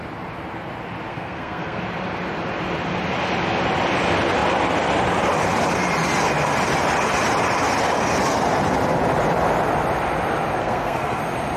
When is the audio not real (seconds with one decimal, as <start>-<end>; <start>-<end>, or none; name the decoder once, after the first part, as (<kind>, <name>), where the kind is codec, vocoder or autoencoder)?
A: 1.1-1.8 (codec, SNAC); 10.6-11.2

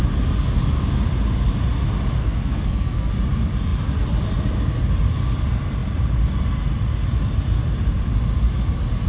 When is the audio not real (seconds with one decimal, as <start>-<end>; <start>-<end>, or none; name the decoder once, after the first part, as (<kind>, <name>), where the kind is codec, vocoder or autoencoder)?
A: 2.2-3.1 (codec, SNAC)

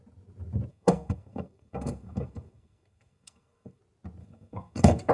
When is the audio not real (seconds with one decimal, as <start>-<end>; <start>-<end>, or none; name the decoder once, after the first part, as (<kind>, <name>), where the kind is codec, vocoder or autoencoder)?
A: 0.7-3.8 (codec, SNAC); 4.2-5.1

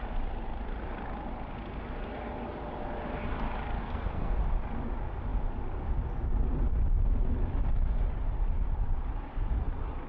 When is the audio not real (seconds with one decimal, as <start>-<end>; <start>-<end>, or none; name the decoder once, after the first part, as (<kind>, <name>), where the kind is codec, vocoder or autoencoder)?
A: 3.8-4.4 (codec, SNAC)